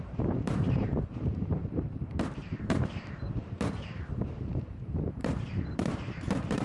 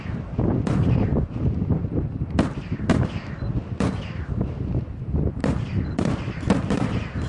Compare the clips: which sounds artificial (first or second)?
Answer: first